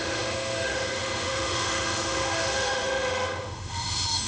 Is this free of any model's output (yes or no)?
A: no